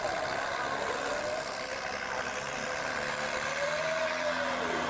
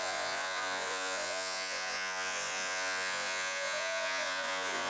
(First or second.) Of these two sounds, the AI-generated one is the second